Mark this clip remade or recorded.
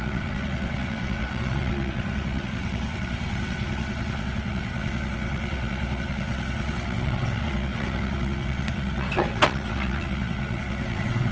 remade